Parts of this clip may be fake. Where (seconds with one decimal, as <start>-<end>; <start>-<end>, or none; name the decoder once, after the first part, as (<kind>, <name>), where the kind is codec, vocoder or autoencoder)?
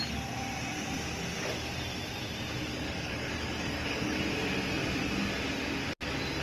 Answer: 2.7-4.2 (codec, DAC)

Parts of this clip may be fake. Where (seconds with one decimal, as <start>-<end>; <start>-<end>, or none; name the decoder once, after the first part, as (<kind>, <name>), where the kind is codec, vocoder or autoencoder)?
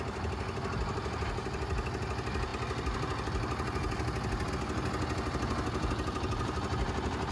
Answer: none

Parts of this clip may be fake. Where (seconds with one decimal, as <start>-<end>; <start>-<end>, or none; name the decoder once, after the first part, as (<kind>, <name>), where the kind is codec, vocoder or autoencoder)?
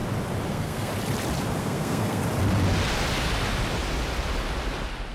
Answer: 0.5-0.9 (codec, SNAC); 1.6-2.2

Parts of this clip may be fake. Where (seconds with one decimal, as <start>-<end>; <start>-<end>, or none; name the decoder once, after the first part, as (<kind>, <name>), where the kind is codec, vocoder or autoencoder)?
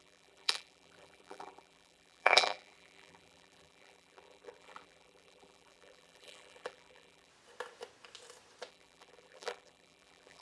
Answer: 0.0-7.3 (vocoder, BigVGAN v2); 8.7-10.4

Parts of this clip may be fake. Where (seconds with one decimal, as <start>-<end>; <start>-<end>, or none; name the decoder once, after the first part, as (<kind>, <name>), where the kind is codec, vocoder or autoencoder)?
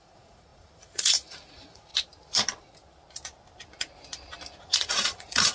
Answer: 0.0-1.9 (vocoder, Vocos); 4.6-5.5